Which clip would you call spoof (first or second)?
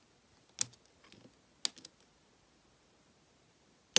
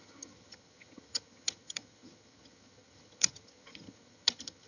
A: second